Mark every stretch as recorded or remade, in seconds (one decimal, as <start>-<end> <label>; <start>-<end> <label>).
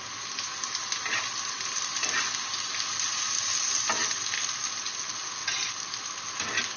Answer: 0.0-6.8 recorded